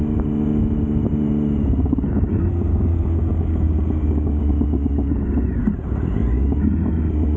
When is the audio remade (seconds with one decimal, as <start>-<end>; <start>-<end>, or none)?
2.7-4.5